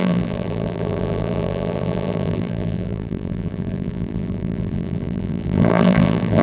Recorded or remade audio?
remade